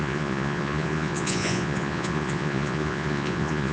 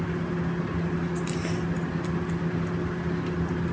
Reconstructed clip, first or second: first